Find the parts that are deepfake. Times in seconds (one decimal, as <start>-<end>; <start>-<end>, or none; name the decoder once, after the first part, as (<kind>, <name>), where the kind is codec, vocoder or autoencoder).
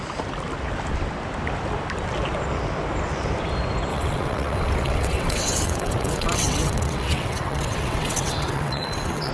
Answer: 3.9-9.3 (vocoder, WaveNeXt)